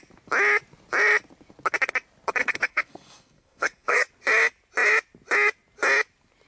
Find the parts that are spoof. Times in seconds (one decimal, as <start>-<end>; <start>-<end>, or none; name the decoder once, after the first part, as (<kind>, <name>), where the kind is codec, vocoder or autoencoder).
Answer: 2.4-4.1 (codec, SNAC)